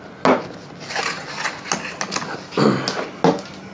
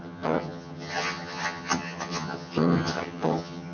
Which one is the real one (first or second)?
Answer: first